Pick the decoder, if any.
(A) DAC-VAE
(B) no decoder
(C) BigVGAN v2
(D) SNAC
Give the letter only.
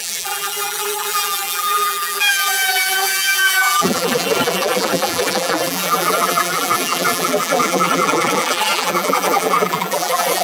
C